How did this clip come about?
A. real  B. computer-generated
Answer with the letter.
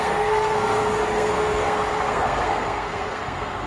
B